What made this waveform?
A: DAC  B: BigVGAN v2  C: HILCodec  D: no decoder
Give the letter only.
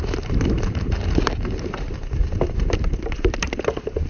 B